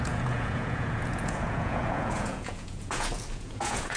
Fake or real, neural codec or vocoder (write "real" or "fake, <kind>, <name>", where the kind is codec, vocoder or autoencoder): fake, vocoder, Vocos